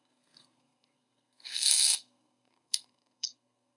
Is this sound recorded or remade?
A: remade